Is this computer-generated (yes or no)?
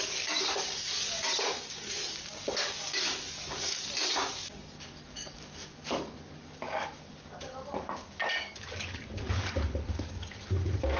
yes